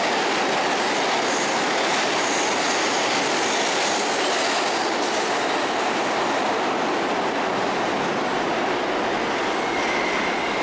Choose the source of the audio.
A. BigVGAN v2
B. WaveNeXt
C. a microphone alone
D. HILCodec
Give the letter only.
C